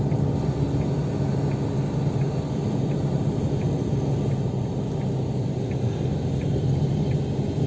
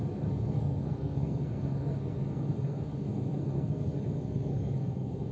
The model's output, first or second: second